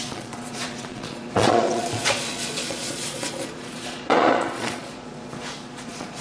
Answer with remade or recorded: remade